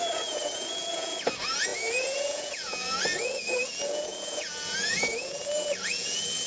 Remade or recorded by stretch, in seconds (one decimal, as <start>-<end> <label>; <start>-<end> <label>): 0.0-6.5 remade